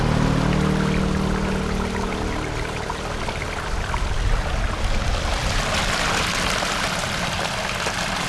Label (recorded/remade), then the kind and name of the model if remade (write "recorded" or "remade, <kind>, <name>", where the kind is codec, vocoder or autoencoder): recorded